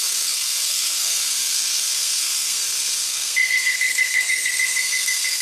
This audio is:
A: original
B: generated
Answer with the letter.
B